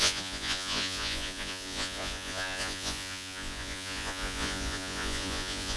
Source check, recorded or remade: remade